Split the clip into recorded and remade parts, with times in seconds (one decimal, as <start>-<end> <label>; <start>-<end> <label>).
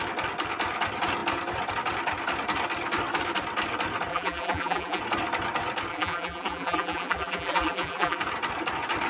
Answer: 0.0-4.1 recorded; 4.1-5.0 remade; 5.0-5.9 recorded; 5.9-8.2 remade; 8.2-9.1 recorded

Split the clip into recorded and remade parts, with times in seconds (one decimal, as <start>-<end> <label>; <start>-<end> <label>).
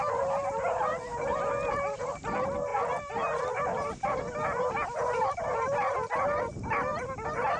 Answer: 0.0-7.6 recorded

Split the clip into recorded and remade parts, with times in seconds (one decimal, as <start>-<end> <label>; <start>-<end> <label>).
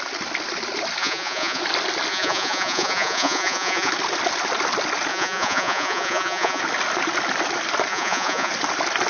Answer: 0.0-1.0 recorded; 1.0-1.6 remade; 1.6-2.1 recorded; 2.1-3.9 remade; 3.9-5.1 recorded; 5.1-6.6 remade; 6.6-7.9 recorded; 7.9-8.5 remade; 8.5-9.1 recorded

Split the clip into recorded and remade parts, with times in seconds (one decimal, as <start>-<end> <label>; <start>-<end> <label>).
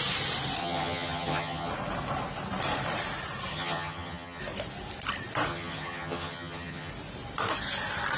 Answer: 0.0-0.6 recorded; 0.6-1.7 remade; 1.7-3.5 recorded; 3.5-4.4 remade; 4.4-5.5 recorded; 5.5-6.9 remade; 6.9-8.2 recorded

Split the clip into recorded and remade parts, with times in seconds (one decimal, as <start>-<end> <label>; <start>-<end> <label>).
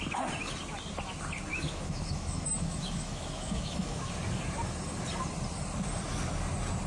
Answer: 0.0-1.5 recorded; 1.5-4.1 remade; 4.1-6.9 recorded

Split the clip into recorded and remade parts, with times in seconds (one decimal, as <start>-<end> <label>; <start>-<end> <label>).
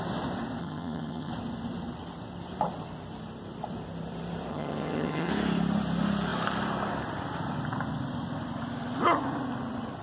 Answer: 0.0-0.6 recorded; 0.6-1.3 remade; 1.3-4.5 recorded; 4.5-5.3 remade; 5.3-10.0 recorded